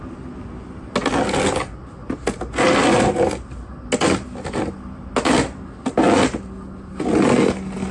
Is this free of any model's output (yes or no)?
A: yes